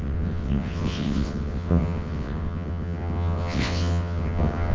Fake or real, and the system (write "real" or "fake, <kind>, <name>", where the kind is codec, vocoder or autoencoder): fake, vocoder, WaveNeXt